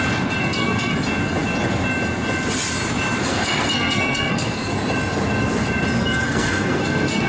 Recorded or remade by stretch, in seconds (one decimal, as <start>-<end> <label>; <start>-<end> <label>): 0.0-0.4 recorded; 0.4-0.9 remade; 0.9-3.2 recorded; 3.2-4.7 remade; 4.7-6.0 recorded; 6.0-7.3 remade